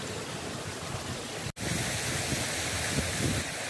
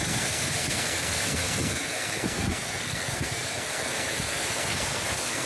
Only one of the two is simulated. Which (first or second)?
second